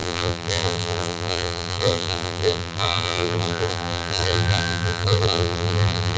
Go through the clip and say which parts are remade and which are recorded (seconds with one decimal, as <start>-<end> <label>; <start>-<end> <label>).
0.0-6.2 remade